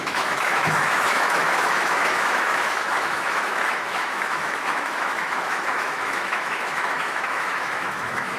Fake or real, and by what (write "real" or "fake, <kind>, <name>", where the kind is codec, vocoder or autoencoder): fake, autoencoder, DAC-VAE